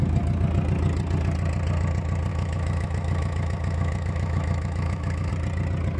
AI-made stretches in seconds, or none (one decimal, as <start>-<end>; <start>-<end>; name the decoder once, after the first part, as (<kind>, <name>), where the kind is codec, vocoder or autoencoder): 2.3-5.3 (autoencoder, DAC-VAE)

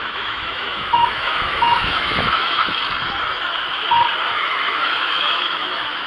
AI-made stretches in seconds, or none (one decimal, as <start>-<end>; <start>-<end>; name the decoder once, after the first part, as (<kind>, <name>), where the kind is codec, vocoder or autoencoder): 0.0-2.8 (autoencoder, DAC-VAE); 4.3-6.1

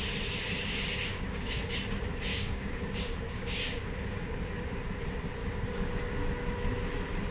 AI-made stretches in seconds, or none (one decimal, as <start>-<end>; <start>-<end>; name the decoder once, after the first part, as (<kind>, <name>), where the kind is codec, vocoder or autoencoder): 1.1-1.7 (codec, DAC); 2.3-4.6; 5.4-5.9

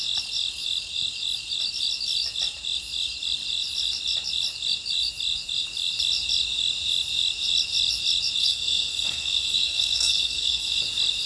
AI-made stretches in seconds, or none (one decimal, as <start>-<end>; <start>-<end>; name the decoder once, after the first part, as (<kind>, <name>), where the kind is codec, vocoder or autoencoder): 8.4-10.8 (codec, SNAC)

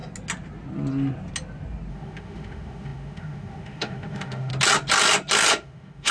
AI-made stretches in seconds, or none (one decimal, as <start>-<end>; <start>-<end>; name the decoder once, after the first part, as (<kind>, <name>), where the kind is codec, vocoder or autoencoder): 1.9-4.5 (autoencoder, DAC-VAE); 5.5-6.1

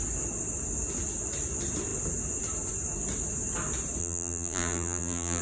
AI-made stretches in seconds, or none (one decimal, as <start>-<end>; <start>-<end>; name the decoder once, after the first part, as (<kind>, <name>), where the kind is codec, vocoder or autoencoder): 4.0-5.4 (vocoder, BigVGAN v2)

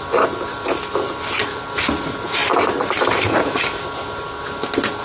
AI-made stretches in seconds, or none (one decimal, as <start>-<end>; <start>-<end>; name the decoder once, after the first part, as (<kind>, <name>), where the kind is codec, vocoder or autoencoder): none

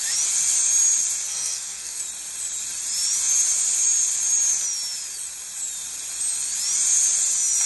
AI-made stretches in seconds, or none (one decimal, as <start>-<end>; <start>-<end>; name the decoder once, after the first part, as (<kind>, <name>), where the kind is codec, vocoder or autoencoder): 1.3-2.0 (codec, SNAC)